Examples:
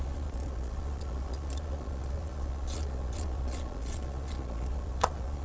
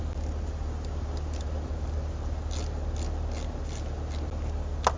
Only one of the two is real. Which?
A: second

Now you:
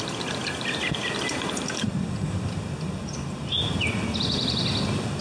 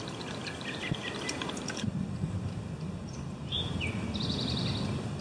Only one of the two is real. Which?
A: first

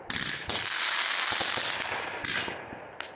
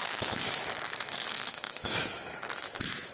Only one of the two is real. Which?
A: first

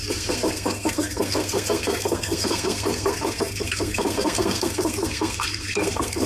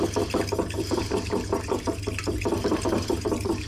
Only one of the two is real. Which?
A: second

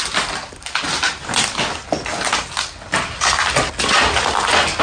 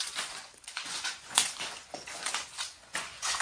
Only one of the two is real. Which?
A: first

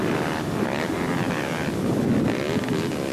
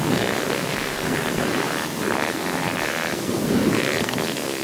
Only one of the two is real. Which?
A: first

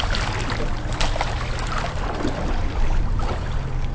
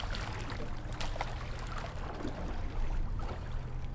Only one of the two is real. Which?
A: second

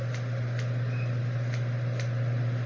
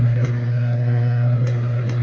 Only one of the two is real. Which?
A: first